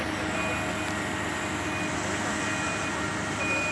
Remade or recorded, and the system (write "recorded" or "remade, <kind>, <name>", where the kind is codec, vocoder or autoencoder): recorded